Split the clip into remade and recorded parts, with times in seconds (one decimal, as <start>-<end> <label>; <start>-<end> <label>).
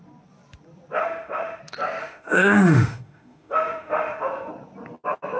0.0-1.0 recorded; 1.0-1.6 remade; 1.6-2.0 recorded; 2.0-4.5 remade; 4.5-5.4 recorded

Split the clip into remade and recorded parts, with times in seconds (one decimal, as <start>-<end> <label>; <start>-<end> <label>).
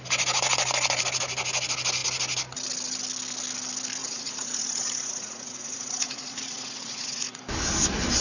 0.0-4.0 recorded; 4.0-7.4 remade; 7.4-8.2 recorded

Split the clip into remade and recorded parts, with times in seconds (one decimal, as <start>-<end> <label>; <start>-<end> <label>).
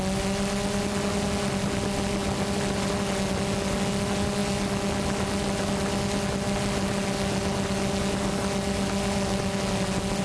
0.0-10.2 recorded